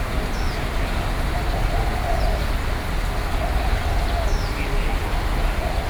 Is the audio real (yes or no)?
yes